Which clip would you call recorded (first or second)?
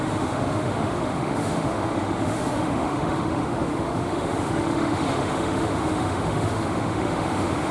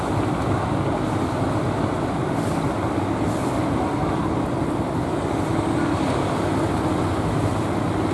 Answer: second